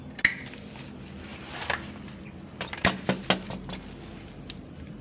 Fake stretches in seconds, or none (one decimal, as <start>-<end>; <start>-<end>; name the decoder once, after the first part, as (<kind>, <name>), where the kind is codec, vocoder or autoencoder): none